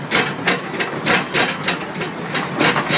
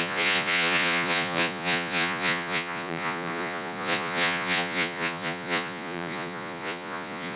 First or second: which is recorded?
first